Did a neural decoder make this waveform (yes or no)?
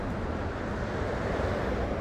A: no